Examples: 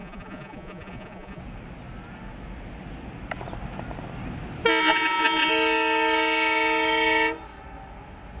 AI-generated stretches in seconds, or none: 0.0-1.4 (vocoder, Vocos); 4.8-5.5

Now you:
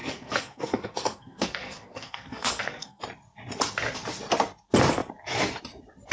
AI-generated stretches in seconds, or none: 0.0-3.0 (codec, SNAC)

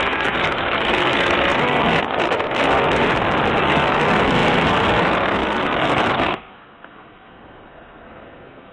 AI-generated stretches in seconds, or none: 0.0-3.0 (codec, SNAC); 3.6-8.7

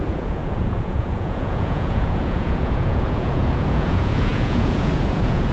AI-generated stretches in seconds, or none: 0.0-5.5 (vocoder, Vocos)

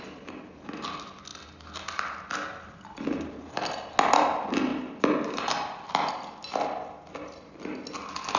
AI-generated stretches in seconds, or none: none

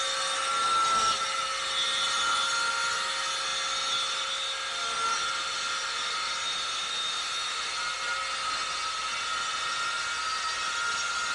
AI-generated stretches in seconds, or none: none